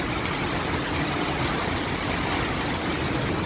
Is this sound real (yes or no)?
yes